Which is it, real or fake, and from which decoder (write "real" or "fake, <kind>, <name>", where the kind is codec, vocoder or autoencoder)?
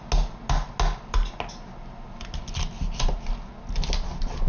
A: real